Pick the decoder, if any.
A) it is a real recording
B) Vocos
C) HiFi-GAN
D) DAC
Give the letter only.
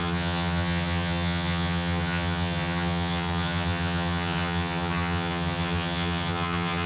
C